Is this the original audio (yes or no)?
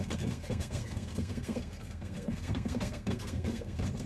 no